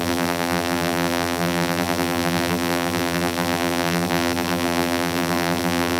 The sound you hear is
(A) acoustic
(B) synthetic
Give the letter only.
B